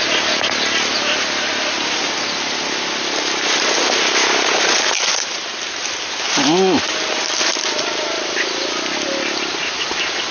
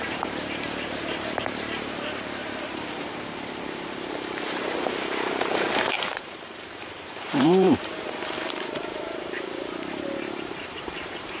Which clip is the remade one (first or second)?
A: second